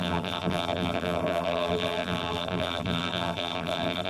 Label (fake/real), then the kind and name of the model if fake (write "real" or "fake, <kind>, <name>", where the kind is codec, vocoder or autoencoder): fake, vocoder, BigVGAN v2